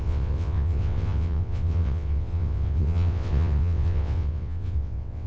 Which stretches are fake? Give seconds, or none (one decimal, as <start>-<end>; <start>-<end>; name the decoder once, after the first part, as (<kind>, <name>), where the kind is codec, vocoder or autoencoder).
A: 0.0-5.3 (vocoder, WaveNeXt)